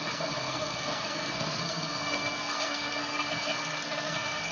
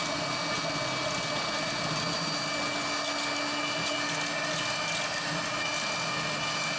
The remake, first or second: first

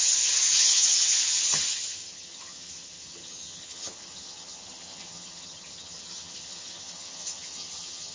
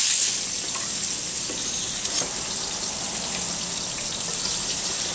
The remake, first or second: first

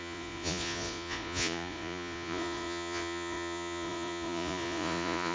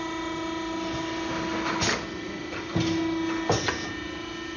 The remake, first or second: first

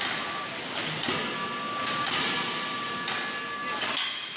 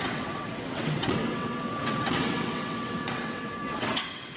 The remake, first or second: second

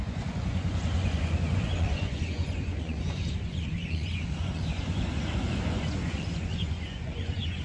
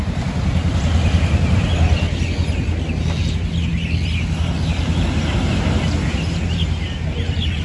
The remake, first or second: first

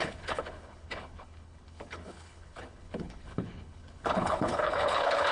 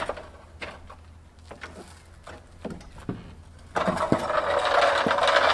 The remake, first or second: first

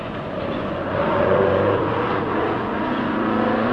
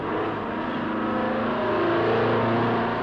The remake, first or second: first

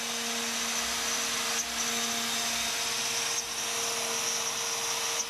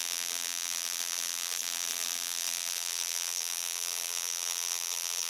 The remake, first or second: second